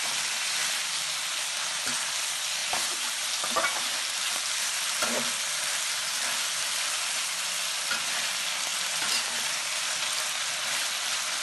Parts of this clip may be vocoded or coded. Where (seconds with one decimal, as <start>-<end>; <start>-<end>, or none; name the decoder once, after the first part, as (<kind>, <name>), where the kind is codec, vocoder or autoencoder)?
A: 0.6-2.0 (vocoder, BigVGAN v2); 2.6-6.9; 8.7-9.8